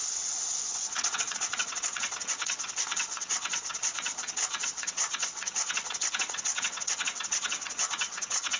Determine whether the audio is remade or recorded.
remade